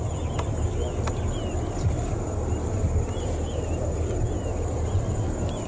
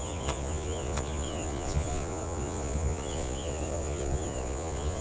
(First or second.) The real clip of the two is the first